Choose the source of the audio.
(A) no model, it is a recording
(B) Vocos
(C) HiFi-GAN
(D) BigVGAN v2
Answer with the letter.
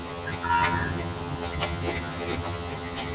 C